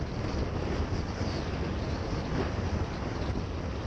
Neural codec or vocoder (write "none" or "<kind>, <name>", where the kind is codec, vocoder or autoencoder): none